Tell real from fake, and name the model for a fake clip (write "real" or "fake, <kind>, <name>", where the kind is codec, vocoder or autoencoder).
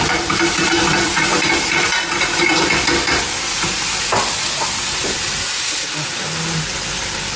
real